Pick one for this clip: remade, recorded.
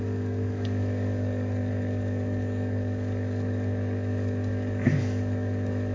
remade